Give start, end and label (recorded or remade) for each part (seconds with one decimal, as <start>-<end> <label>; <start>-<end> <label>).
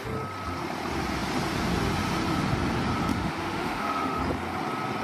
0.0-3.1 recorded; 3.1-4.2 remade; 4.2-5.0 recorded